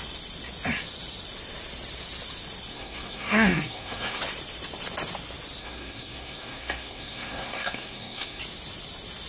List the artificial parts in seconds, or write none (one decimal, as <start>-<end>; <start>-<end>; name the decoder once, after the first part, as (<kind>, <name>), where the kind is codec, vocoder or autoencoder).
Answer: 2.7-4.2 (codec, SNAC); 5.6-8.4